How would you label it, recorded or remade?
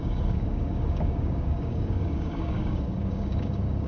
remade